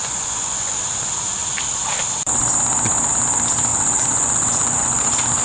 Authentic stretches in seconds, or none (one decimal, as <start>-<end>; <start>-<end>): 0.7-3.7; 5.0-5.4